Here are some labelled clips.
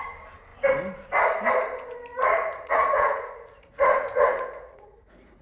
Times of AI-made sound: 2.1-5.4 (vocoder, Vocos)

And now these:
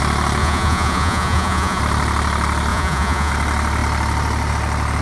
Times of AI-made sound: 0.4-1.8 (vocoder, Vocos); 2.7-3.3

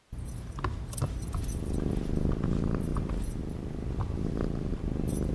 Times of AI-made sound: 1.4-1.9 (vocoder, BigVGAN v2)

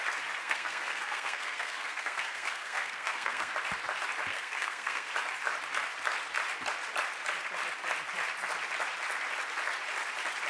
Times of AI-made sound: 0.4-3.5 (codec, SNAC); 4.3-5.1